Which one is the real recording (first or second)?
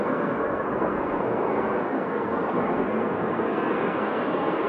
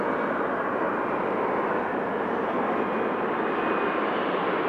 second